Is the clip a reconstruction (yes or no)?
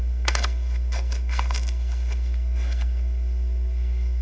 yes